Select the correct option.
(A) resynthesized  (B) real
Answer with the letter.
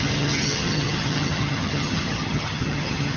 A